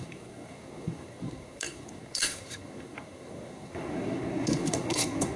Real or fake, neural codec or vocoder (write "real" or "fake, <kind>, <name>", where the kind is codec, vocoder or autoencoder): fake, codec, SNAC